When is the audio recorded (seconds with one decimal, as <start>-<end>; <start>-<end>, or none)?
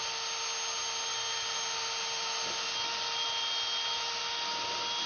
0.0-5.1